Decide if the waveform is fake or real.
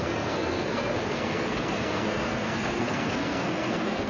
fake